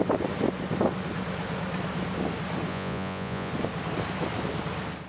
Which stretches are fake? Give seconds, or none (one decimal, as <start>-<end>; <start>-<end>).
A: 2.7-3.5